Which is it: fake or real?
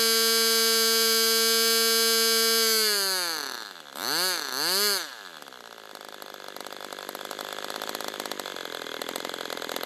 real